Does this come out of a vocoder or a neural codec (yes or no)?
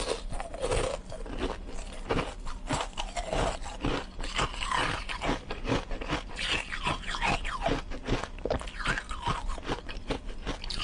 no